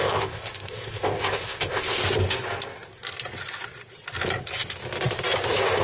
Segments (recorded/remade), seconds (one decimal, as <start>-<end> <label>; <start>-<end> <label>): 0.0-2.0 remade; 2.0-5.8 recorded